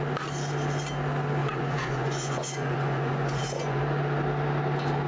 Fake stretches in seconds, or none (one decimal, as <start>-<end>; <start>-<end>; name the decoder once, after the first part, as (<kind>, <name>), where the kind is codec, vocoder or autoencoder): 1.4-3.8 (vocoder, Vocos)